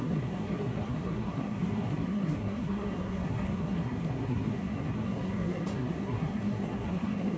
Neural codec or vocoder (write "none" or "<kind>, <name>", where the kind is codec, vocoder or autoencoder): codec, SNAC